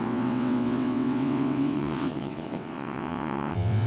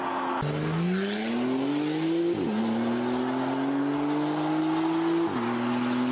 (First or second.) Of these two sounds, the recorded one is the second